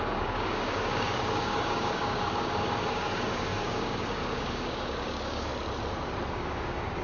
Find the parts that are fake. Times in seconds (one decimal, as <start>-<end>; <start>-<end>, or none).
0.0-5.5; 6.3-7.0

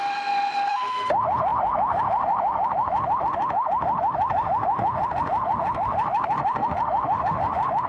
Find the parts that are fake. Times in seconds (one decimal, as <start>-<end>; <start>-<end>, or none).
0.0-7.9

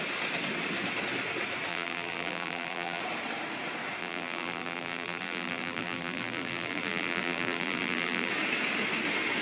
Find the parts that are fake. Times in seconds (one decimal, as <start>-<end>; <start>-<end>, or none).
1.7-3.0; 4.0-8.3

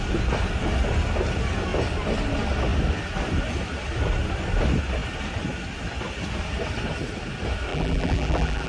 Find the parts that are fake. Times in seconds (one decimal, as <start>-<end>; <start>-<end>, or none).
7.7-8.7

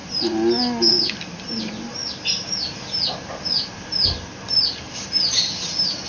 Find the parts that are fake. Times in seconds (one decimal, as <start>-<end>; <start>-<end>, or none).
1.6-2.0